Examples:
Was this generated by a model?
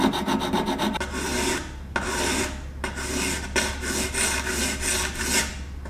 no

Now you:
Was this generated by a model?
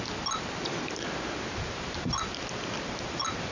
no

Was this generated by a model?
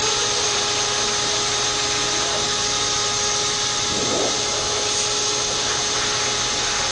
no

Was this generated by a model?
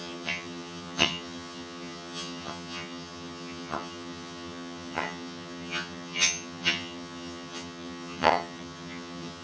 yes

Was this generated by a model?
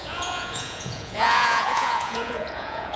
yes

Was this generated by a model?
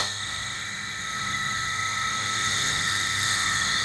yes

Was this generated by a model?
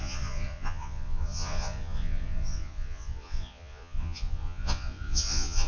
yes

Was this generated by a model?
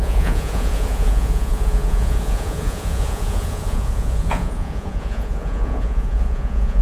yes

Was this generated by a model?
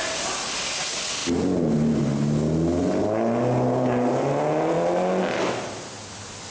no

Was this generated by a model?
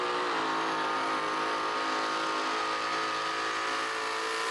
no